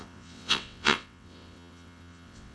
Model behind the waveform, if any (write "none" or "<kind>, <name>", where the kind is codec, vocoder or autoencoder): vocoder, WaveNeXt